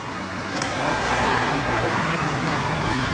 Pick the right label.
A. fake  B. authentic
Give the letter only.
A